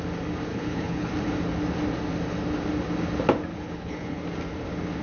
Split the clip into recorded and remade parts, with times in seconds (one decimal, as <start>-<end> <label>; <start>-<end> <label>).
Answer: 0.0-0.5 recorded; 0.5-1.1 remade; 1.1-3.5 recorded; 3.5-4.2 remade; 4.2-5.0 recorded